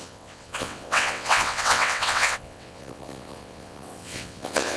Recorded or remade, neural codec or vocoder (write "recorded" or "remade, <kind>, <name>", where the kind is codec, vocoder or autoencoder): remade, vocoder, WaveNeXt